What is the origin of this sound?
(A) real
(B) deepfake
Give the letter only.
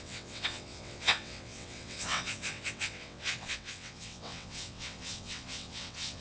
B